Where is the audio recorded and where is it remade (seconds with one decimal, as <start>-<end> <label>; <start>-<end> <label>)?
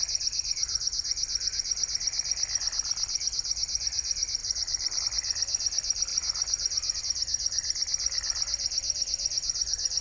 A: 0.0-4.4 recorded; 4.4-5.0 remade; 5.0-10.0 recorded